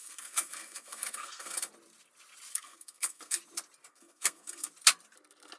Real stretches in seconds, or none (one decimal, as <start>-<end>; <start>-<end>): 1.7-2.5; 3.4-3.9; 4.7-5.6